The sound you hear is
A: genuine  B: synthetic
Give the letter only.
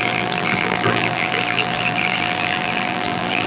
B